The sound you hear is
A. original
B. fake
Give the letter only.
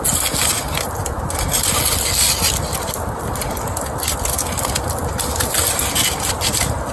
A